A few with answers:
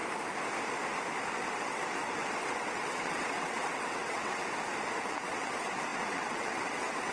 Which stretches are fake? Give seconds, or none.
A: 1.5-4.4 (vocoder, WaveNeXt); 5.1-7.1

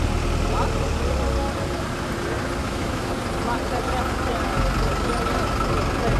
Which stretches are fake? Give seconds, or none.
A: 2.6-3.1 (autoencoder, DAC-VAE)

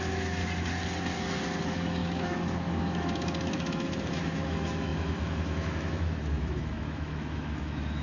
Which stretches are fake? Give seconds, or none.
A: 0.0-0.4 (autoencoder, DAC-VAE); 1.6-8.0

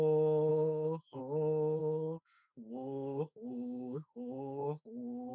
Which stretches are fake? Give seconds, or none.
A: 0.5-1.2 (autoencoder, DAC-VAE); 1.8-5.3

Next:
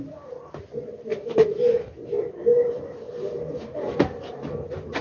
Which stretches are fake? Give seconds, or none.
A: 1.1-3.9 (vocoder, BigVGAN v2)